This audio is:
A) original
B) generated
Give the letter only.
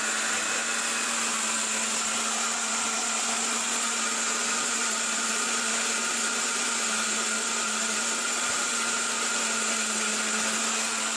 A